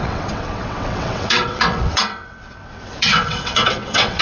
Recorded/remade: remade